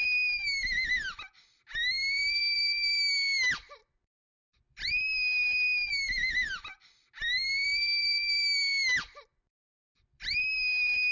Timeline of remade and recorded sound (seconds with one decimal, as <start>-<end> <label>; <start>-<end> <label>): 0.0-11.1 remade